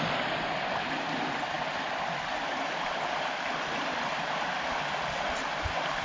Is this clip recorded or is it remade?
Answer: remade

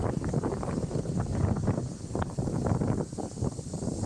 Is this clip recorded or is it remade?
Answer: recorded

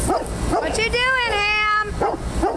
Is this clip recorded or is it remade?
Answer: recorded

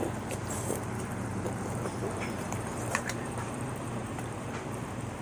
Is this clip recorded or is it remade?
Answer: remade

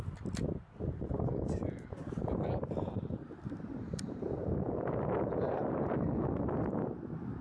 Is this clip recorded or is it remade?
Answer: recorded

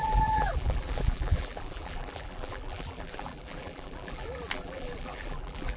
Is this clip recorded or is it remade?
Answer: remade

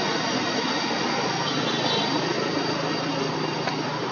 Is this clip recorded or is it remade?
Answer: recorded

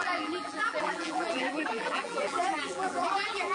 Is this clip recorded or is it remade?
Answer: remade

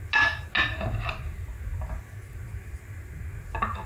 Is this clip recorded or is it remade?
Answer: recorded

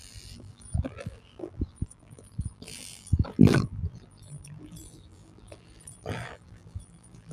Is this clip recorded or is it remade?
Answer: remade